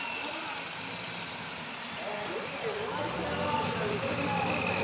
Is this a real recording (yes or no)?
yes